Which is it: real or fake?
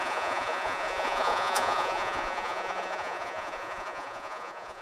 fake